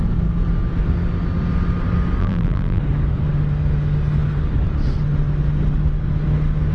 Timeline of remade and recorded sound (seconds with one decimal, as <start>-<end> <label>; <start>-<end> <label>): 0.0-2.2 recorded; 2.2-2.8 remade; 2.8-6.7 recorded